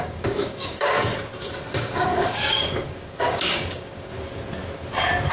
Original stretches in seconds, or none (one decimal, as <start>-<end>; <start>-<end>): 1.0-1.7; 4.1-5.3

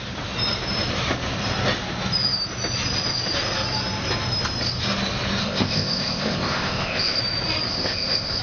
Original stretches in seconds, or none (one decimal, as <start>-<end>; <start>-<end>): 0.0-5.4; 7.2-7.7

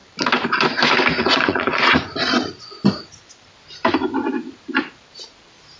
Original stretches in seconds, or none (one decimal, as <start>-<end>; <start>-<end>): 0.0-1.2; 2.1-5.8

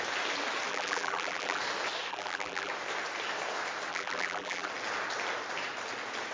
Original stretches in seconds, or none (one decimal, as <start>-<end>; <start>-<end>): 0.0-0.7; 1.6-2.1; 2.7-3.9; 4.7-6.3

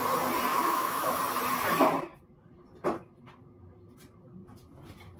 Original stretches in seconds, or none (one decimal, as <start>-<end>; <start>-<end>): 0.0-0.5; 1.2-5.2

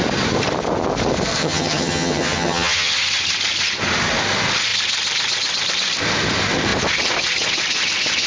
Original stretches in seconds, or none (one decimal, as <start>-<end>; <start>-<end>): 0.0-1.4; 2.9-8.3